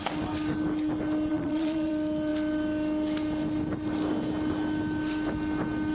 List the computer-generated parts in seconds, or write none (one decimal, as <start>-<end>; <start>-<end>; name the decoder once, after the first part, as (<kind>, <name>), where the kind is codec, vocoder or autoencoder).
1.3-1.9 (vocoder, Vocos)

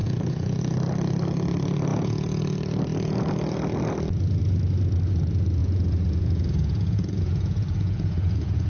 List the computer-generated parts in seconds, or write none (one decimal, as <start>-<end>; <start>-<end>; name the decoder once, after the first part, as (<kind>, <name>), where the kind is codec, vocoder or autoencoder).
0.0-0.6 (vocoder, Vocos); 1.9-2.4; 5.6-8.7

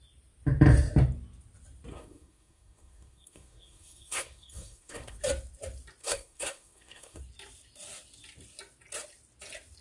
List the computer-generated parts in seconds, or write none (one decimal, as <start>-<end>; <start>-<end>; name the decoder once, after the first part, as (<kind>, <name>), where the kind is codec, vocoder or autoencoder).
1.9-5.2 (codec, SNAC); 6.0-7.2

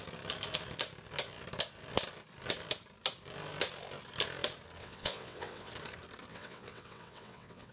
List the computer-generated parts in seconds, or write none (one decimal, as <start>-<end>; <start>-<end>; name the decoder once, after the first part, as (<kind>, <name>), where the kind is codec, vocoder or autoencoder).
4.8-5.7 (vocoder, WaveNeXt); 6.3-7.7

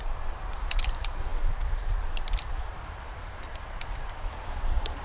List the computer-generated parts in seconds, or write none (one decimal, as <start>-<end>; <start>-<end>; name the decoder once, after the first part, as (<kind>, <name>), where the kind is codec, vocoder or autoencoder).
0.0-5.0 (vocoder, BigVGAN v2)

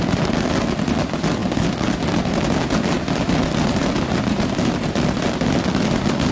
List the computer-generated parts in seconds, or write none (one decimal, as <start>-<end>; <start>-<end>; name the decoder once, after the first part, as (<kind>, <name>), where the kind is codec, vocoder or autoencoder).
none

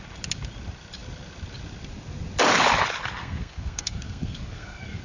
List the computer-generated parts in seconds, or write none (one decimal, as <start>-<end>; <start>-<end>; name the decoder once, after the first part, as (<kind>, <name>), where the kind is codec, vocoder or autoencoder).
3.2-5.0 (codec, SNAC)

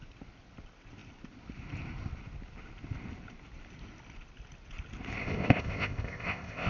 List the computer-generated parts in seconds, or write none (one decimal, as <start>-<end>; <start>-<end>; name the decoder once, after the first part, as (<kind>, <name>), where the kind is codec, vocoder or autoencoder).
5.2-6.7 (codec, ZipCodec)